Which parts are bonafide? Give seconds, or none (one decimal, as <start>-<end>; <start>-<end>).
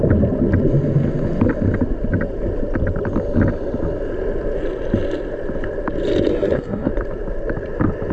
0.0-6.3; 6.9-8.1